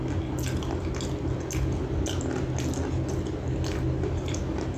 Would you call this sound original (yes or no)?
yes